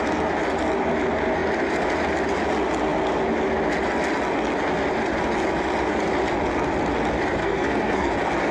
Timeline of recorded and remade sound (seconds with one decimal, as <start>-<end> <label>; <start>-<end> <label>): 0.0-7.4 recorded; 7.4-8.1 remade; 8.1-8.5 recorded